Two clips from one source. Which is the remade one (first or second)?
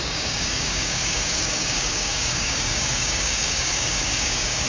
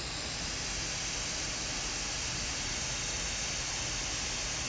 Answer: first